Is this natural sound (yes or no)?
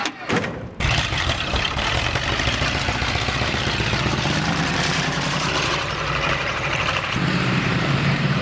no